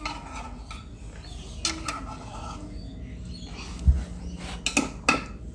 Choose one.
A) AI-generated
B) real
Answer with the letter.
B